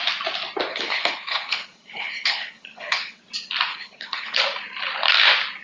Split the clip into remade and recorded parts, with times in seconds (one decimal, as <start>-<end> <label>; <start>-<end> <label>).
0.0-0.7 recorded; 0.7-3.2 remade; 3.2-3.7 recorded; 3.7-4.4 remade; 4.4-5.6 recorded